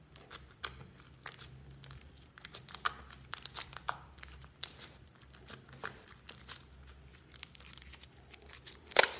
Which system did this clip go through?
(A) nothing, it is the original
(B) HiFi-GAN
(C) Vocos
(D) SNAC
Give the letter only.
A